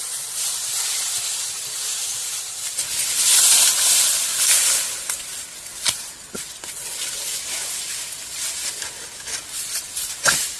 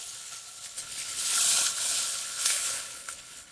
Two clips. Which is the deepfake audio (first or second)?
second